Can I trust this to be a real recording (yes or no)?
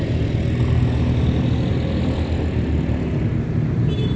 yes